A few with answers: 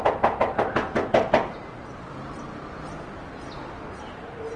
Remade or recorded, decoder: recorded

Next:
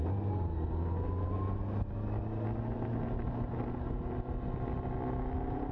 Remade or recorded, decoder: recorded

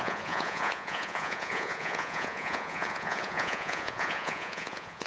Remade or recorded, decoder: remade, vocoder, Vocos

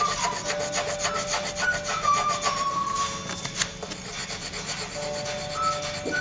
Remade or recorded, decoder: recorded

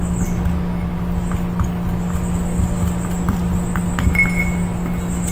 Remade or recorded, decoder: recorded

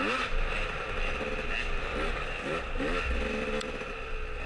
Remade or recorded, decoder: recorded